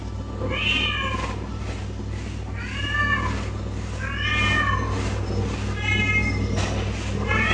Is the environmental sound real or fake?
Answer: real